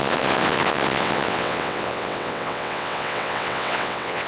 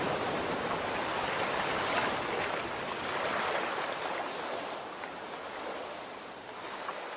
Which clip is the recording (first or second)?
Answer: second